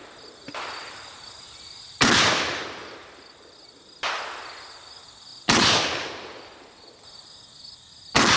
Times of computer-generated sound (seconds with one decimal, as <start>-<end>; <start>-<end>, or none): 0.0-2.0; 2.8-3.5